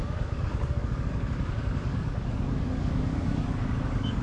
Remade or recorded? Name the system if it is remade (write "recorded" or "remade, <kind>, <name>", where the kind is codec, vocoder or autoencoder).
remade, codec, DAC